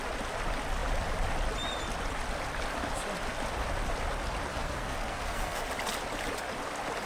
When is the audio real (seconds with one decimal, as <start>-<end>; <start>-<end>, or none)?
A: 0.0-4.5; 5.6-7.1